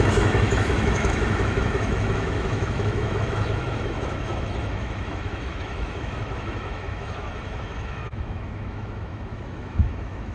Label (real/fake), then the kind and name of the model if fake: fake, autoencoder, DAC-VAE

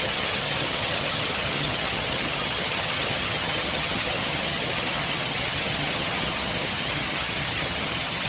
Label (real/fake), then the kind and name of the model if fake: fake, vocoder, HiFi-GAN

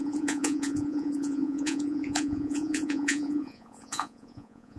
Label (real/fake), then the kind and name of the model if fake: fake, vocoder, Vocos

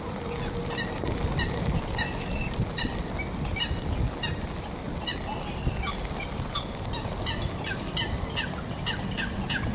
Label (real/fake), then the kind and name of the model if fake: real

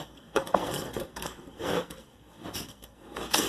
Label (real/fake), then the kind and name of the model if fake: fake, codec, SNAC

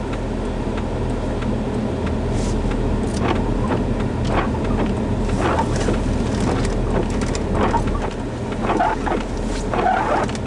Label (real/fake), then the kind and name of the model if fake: real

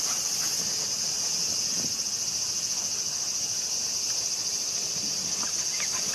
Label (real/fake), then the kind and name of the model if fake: real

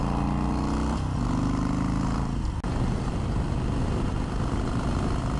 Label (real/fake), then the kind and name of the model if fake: real